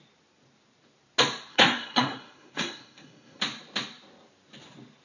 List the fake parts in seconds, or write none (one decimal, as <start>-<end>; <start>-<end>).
1.5-3.4